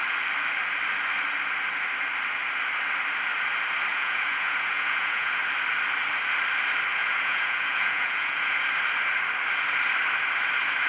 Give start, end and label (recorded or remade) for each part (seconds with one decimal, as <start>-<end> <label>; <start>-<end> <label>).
0.0-3.9 recorded; 3.9-5.4 remade; 5.4-6.9 recorded; 6.9-8.6 remade; 8.6-10.9 recorded